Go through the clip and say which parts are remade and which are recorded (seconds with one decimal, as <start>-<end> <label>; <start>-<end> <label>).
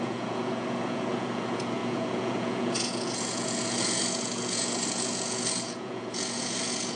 0.0-7.0 remade